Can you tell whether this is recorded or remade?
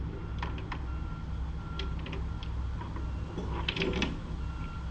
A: recorded